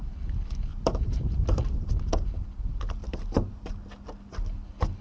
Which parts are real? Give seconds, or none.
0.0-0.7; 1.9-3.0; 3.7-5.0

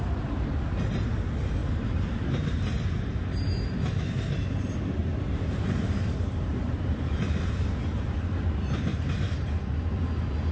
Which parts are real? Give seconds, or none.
0.0-1.6; 3.2-5.0; 7.7-8.9; 9.5-10.5